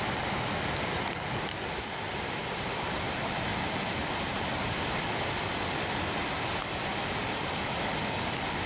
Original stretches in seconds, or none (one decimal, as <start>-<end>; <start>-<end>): 0.0-3.5; 4.8-8.7